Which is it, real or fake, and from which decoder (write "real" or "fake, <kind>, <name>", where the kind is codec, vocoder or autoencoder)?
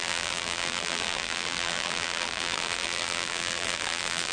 fake, vocoder, BigVGAN v2